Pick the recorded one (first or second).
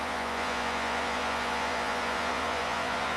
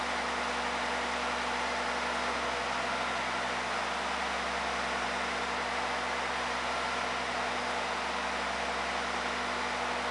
second